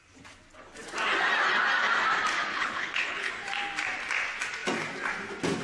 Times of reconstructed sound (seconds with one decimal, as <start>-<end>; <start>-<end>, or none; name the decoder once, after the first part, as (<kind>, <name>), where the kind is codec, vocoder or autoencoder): 2.5-3.3 (codec, HILCodec)